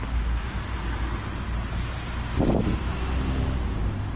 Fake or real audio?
real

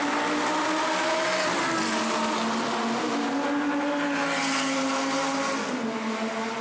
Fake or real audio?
real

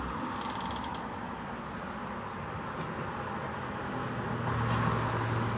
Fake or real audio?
real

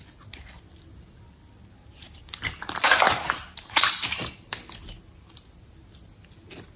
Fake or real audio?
real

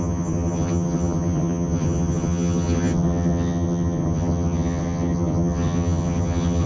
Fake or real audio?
fake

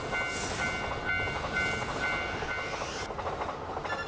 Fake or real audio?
real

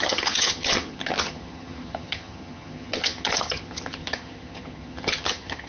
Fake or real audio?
fake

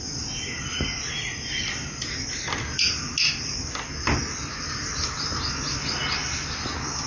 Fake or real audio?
real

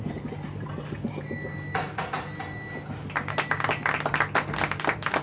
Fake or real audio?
real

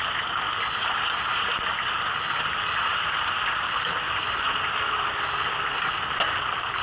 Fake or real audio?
real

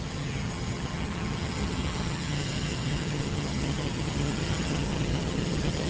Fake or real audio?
fake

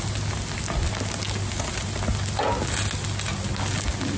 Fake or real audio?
real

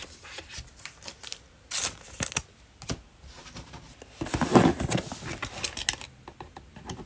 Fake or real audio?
real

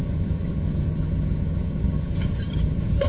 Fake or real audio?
fake